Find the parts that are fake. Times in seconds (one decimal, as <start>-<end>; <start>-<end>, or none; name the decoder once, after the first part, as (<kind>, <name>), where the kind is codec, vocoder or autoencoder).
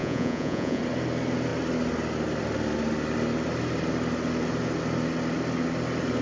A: 0.0-0.8 (vocoder, Vocos)